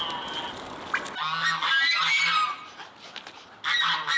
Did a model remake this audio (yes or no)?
no